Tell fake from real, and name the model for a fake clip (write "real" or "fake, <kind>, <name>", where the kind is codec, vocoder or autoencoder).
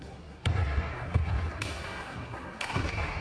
fake, codec, SNAC